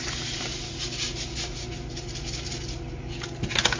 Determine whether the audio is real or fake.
real